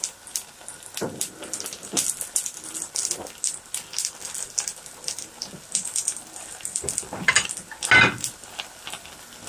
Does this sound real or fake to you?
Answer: real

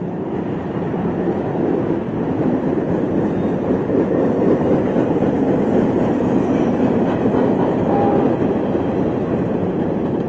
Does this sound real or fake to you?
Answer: fake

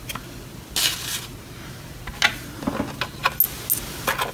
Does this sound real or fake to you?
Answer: real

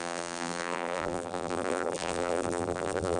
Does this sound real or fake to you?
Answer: fake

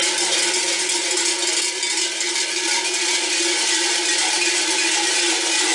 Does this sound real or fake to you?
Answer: real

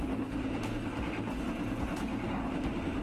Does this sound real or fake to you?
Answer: real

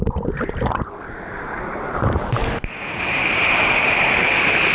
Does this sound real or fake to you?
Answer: real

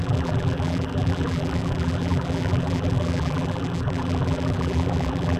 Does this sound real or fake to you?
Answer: fake